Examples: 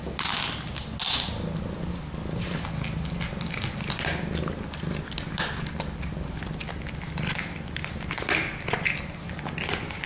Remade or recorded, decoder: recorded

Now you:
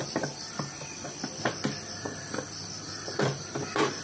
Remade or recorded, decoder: remade, vocoder, BigVGAN v2